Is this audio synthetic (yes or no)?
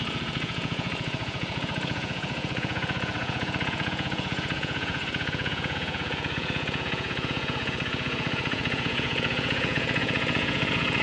yes